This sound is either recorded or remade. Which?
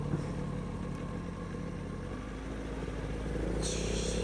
recorded